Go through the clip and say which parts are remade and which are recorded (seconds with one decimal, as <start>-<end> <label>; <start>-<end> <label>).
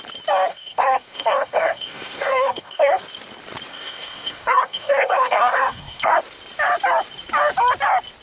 0.0-0.5 recorded; 0.5-3.0 remade; 3.0-3.7 recorded; 3.7-6.2 remade; 6.2-8.2 recorded